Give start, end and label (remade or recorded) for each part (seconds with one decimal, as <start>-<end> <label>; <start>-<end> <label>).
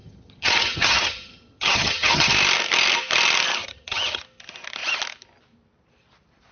0.0-2.3 remade; 2.3-3.6 recorded; 3.6-4.2 remade; 4.2-6.5 recorded